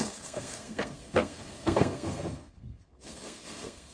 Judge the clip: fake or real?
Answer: fake